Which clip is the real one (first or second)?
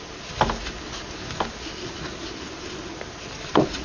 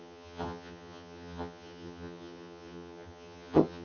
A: first